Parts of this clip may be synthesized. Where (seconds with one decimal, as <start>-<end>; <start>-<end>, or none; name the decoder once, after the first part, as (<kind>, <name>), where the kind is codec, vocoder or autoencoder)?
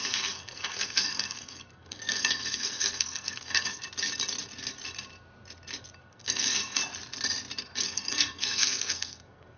0.0-3.8 (codec, SNAC); 6.0-6.8; 7.8-9.6